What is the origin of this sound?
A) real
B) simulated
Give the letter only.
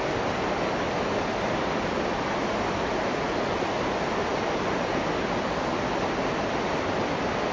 A